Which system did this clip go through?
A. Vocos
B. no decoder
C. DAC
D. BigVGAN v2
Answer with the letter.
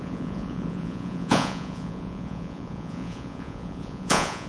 A